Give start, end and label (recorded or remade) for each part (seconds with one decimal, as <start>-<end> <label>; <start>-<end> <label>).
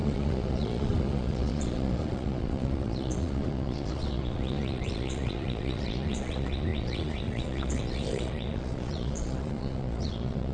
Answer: 0.0-10.5 remade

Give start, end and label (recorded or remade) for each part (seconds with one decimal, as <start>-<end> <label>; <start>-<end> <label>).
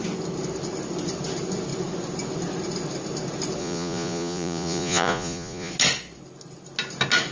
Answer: 0.0-3.6 recorded; 3.6-5.7 remade; 5.7-7.3 recorded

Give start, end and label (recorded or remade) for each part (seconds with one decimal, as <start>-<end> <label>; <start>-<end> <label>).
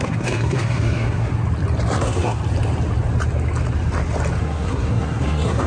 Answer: 0.0-1.3 remade; 1.3-2.0 recorded; 2.0-2.4 remade; 2.4-4.4 recorded; 4.4-5.7 remade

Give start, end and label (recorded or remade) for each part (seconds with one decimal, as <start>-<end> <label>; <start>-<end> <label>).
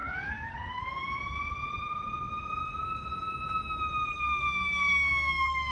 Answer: 0.0-0.8 remade; 0.8-4.1 recorded; 4.1-5.7 remade